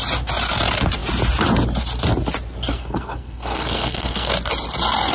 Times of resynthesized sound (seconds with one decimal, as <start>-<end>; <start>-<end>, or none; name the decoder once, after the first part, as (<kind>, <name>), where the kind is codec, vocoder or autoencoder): 2.7-4.3 (codec, SNAC)